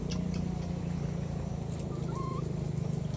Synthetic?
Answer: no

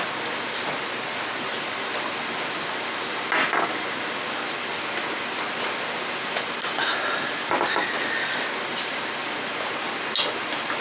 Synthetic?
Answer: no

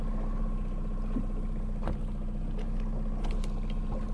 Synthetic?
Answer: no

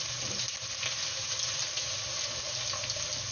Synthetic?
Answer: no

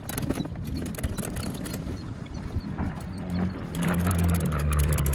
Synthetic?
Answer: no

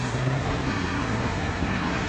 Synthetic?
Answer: yes